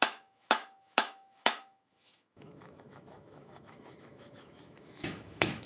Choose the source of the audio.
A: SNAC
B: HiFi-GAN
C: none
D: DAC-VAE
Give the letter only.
D